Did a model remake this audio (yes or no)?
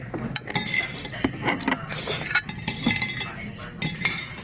no